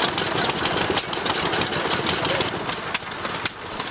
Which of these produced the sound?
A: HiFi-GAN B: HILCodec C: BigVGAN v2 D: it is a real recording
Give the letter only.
D